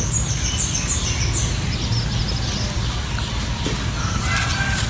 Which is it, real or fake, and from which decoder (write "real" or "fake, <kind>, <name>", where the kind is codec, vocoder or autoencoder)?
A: real